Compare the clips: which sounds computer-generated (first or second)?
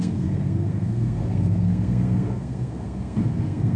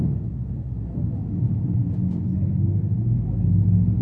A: first